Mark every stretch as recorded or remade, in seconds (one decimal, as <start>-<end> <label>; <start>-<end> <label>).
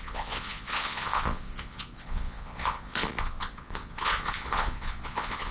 0.0-5.5 remade